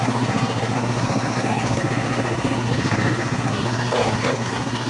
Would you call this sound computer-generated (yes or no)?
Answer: yes